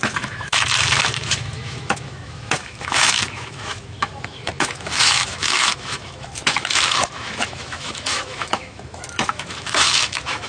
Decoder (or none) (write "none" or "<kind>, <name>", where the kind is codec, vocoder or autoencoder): autoencoder, DAC-VAE